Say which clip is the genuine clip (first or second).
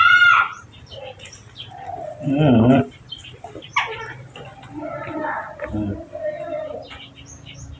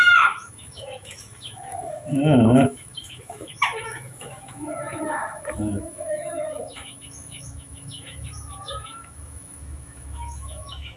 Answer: first